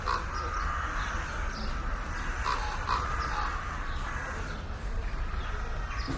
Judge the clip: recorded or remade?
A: recorded